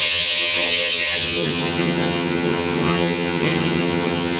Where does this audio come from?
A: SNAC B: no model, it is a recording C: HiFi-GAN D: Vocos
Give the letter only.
C